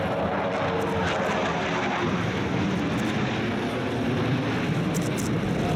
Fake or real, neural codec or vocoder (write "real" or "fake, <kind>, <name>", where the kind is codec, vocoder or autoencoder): real